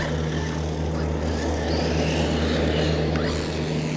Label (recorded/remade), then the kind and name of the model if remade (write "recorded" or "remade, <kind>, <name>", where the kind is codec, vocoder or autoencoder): recorded